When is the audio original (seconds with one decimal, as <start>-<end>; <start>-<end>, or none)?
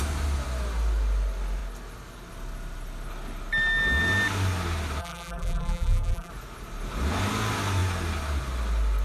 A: 0.0-5.0; 6.3-9.0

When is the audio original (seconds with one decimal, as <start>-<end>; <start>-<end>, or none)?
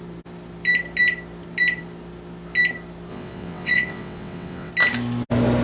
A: 0.0-3.1; 4.7-5.6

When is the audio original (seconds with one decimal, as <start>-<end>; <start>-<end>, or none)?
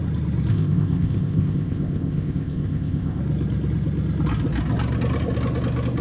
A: 0.0-0.5; 3.2-6.0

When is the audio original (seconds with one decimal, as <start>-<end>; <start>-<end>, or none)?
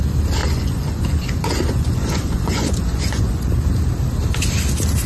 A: 0.0-0.4; 3.5-5.1